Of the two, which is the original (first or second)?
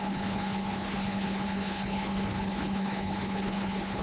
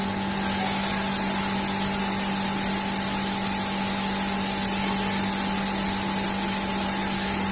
second